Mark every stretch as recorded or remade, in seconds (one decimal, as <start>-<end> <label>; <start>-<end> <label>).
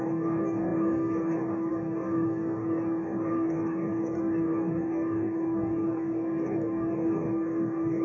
0.0-8.0 remade